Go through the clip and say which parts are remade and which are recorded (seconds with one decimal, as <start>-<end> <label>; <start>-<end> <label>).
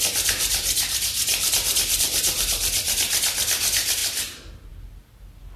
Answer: 0.0-1.3 recorded; 1.3-2.8 remade; 2.8-5.6 recorded